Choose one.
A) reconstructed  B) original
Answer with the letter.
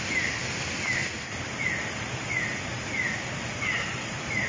B